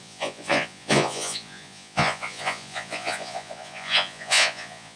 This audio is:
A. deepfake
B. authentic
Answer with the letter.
A